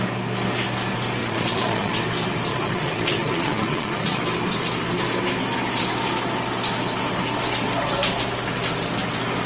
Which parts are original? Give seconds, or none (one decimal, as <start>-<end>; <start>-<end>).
0.0-1.2; 2.0-2.5; 4.2-9.5